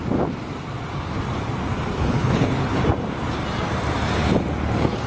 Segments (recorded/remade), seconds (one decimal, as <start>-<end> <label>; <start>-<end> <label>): 0.0-1.9 recorded; 1.9-2.8 remade; 2.8-5.1 recorded